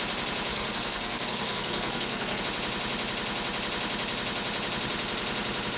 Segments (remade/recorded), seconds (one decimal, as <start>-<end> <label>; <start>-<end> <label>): 0.0-0.5 recorded; 0.5-2.4 remade; 2.4-5.8 recorded